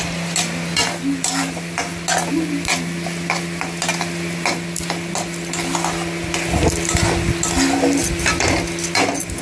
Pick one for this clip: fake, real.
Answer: real